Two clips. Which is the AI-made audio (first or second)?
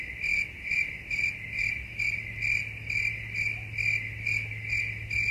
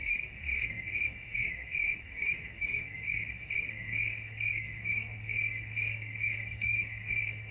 second